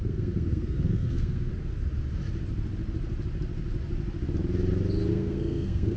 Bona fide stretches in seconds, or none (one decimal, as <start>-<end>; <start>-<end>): 1.5-5.1